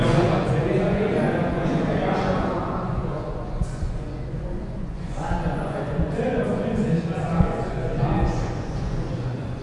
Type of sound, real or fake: fake